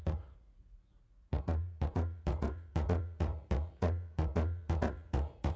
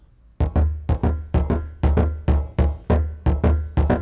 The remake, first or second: first